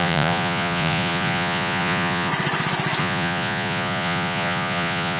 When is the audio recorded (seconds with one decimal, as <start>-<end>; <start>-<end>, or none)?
2.3-3.0